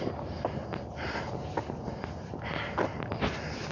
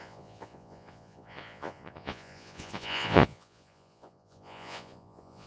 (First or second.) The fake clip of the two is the second